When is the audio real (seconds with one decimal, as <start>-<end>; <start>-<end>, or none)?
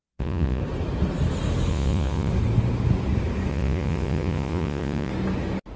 0.6-1.7; 2.3-3.5; 5.1-5.8